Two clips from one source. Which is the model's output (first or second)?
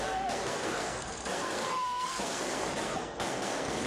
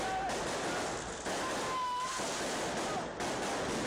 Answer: first